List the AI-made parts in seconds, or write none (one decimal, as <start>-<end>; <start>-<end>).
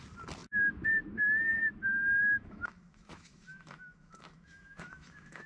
2.2-5.5